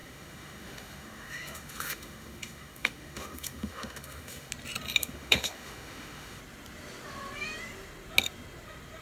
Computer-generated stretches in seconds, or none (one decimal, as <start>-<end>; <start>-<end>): 0.0-4.5; 5.0-6.4